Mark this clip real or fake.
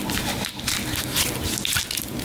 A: real